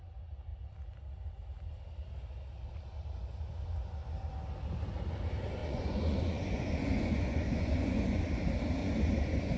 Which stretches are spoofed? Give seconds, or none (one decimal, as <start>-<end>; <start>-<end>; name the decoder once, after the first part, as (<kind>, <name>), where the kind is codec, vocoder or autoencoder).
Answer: 5.6-8.2 (vocoder, Vocos); 8.8-9.6